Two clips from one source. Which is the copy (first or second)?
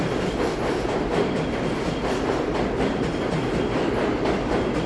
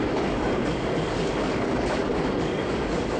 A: second